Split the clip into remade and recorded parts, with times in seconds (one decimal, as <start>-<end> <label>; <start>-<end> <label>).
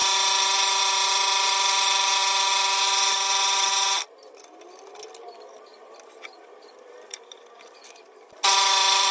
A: 0.0-5.7 recorded; 5.7-9.1 remade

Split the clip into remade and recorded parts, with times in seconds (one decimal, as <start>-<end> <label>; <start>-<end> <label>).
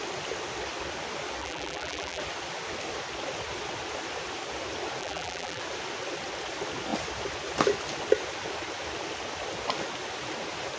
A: 0.0-1.4 recorded; 1.4-2.2 remade; 2.2-5.0 recorded; 5.0-5.6 remade; 5.6-10.8 recorded